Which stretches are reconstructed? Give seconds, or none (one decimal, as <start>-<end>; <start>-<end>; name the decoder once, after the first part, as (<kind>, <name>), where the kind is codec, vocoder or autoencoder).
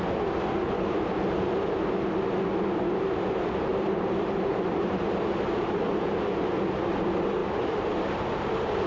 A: 3.7-6.6 (vocoder, BigVGAN v2)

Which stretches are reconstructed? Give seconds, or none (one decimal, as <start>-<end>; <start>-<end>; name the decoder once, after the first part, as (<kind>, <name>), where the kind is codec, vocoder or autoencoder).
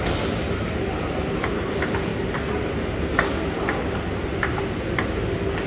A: 0.6-1.7 (vocoder, BigVGAN v2)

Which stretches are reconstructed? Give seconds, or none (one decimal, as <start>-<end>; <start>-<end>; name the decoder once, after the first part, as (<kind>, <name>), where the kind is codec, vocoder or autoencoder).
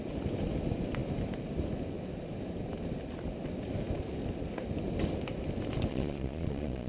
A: 5.9-6.9 (vocoder, Vocos)